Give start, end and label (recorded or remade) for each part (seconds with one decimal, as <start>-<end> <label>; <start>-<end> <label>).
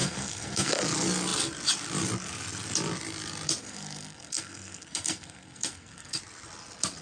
0.0-0.8 remade; 0.8-3.6 recorded; 3.6-6.2 remade; 6.2-7.0 recorded